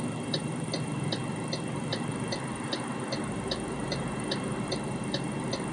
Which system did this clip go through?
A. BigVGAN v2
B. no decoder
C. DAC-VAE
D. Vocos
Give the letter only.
A